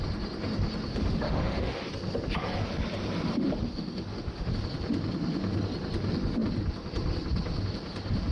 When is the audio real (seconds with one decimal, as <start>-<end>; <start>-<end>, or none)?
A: 0.0-0.9; 1.9-3.3; 4.5-8.3